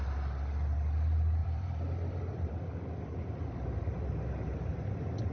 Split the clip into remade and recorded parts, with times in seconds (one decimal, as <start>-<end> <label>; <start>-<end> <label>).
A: 0.0-1.4 recorded; 1.4-2.5 remade; 2.5-5.3 recorded